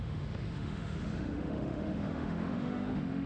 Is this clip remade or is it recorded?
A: remade